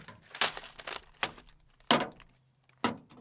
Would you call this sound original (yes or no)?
yes